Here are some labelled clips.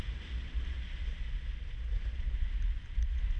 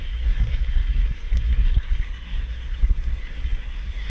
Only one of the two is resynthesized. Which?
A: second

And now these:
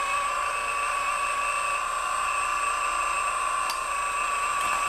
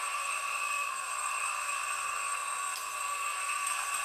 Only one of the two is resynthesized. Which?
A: second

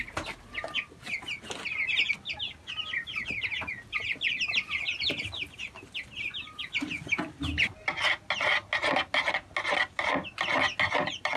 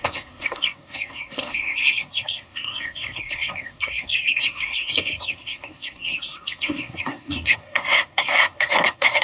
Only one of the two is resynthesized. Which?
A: second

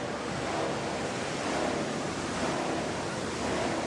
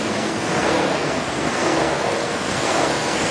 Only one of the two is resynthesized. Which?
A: second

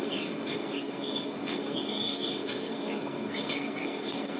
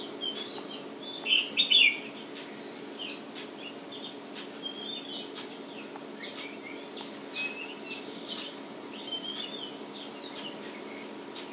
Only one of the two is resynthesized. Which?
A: first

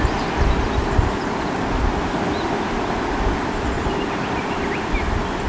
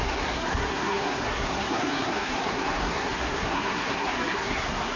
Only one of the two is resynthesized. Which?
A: second